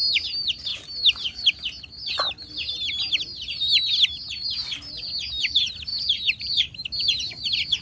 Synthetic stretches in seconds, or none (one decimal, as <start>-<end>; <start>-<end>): none